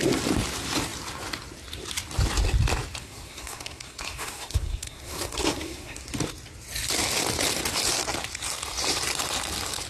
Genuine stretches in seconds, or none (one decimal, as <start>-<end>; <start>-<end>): 0.0-3.0; 6.1-9.9